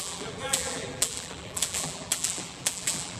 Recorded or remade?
remade